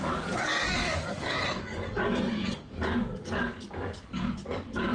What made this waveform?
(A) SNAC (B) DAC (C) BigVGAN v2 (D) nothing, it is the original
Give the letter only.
B